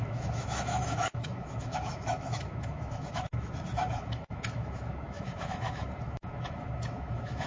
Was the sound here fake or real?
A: fake